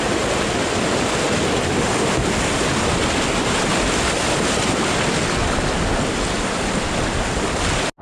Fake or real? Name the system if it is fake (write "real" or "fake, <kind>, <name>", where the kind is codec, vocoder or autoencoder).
real